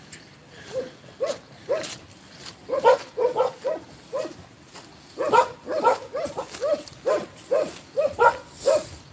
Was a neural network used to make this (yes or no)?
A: no